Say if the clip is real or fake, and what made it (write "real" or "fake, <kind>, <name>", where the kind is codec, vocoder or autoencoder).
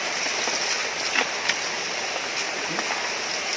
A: real